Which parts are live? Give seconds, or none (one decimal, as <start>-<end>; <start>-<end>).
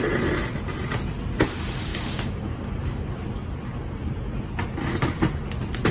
0.0-1.9; 3.1-5.9